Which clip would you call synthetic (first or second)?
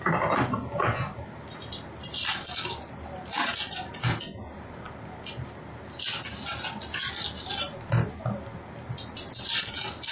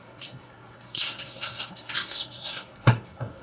second